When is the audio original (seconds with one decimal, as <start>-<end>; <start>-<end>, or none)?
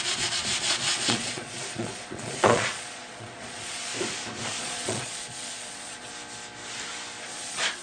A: 3.9-4.6; 6.1-7.2